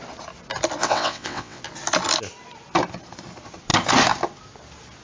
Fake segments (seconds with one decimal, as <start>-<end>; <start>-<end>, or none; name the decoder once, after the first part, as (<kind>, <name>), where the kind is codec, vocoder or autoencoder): 0.8-1.6 (vocoder, WaveNeXt)